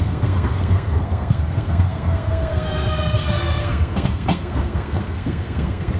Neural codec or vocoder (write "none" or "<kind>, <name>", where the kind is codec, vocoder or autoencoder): codec, SNAC